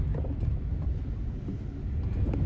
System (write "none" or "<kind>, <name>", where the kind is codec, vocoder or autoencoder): none